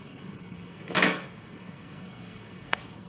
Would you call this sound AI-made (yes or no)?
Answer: yes